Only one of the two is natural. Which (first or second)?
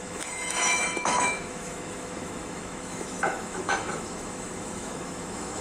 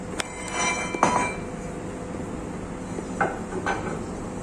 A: second